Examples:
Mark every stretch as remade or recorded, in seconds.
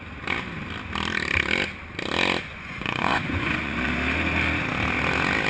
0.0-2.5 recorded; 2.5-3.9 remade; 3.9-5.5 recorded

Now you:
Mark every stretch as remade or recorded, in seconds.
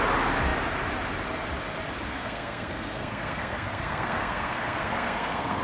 0.0-2.1 recorded; 2.1-5.6 remade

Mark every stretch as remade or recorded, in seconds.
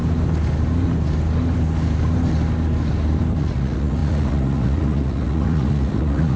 0.0-3.4 recorded; 3.4-6.4 remade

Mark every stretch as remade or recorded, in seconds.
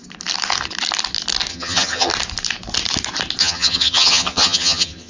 0.0-1.5 recorded; 1.5-2.1 remade; 2.1-3.4 recorded; 3.4-5.1 remade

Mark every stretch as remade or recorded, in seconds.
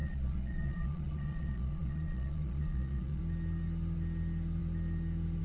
0.0-3.2 remade; 3.2-5.4 recorded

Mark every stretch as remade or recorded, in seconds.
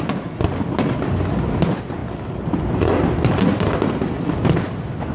0.0-5.1 recorded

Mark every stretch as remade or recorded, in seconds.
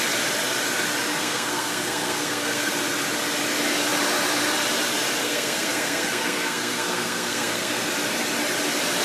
0.0-1.2 recorded; 1.2-2.7 remade; 2.7-5.2 recorded; 5.2-7.9 remade; 7.9-9.0 recorded